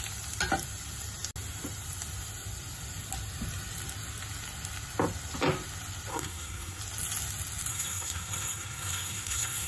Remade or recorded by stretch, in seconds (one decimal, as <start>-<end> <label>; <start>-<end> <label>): 0.0-6.1 recorded; 6.1-6.8 remade; 6.8-7.7 recorded; 7.7-9.7 remade